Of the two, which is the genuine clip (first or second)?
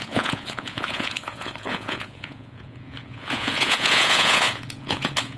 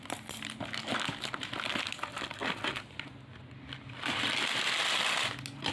second